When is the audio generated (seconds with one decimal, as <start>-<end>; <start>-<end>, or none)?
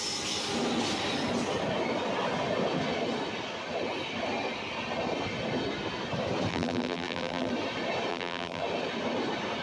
6.5-7.5; 8.1-8.6